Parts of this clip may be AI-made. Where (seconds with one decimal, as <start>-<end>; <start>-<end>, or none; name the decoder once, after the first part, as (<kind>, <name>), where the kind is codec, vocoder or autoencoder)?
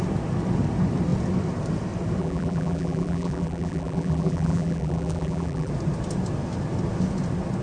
2.2-5.7 (vocoder, BigVGAN v2)